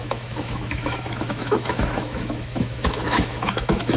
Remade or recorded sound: remade